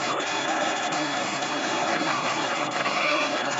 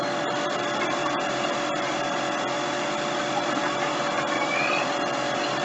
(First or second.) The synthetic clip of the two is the first